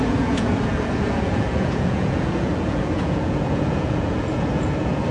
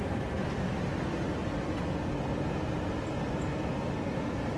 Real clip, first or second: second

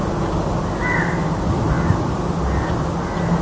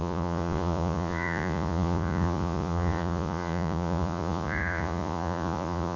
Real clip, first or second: first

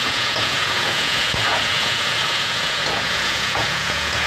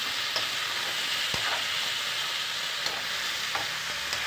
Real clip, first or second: second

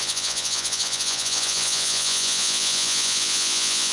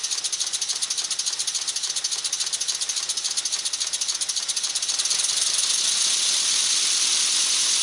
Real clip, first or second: second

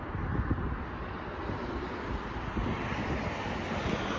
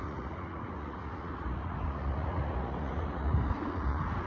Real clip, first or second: first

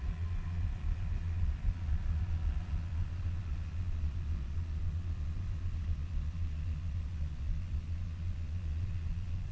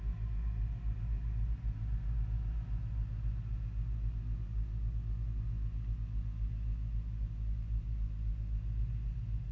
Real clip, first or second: second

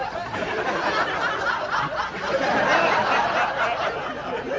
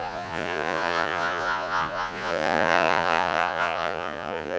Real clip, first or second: first